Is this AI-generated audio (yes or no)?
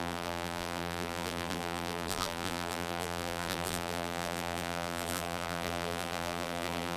yes